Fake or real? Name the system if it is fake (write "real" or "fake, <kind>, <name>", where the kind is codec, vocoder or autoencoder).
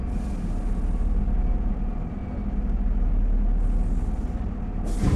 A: real